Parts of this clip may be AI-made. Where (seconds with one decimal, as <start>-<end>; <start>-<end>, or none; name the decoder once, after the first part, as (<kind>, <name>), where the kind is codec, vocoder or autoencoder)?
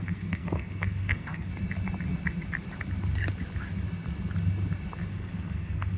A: 0.0-1.5 (codec, SNAC); 5.1-6.0